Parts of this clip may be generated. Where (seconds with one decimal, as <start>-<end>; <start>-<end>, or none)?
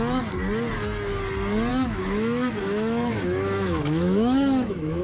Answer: 1.7-5.0